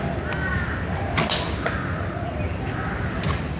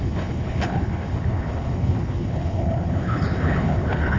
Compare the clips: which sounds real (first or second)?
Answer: first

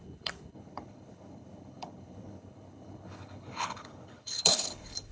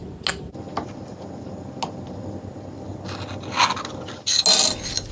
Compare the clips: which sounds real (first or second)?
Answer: second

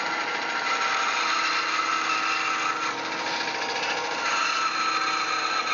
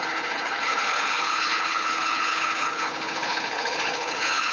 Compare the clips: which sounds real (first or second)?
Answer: first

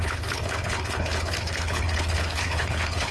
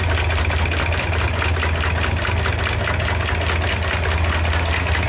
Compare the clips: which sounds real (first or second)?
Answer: second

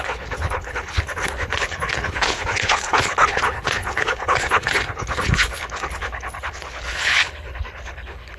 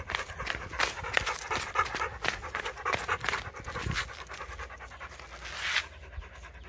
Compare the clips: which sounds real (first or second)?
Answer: second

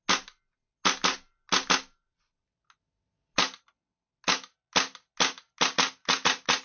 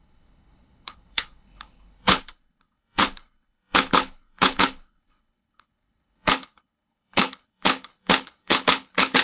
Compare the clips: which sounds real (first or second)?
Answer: first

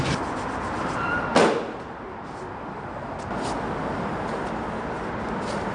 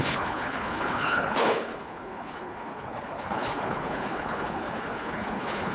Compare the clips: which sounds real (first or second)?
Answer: first